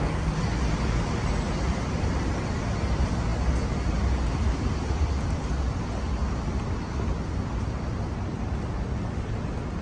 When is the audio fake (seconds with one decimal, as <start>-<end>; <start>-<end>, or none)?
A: none